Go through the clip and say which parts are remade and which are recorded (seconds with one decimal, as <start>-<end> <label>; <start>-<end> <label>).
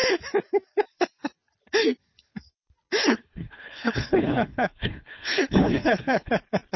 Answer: 0.0-3.0 recorded; 3.0-6.3 remade; 6.3-6.8 recorded